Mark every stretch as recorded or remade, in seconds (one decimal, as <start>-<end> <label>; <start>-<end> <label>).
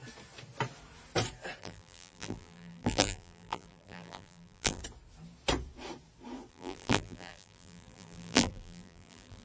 0.0-1.6 recorded; 1.6-4.8 remade; 4.8-6.5 recorded; 6.5-9.4 remade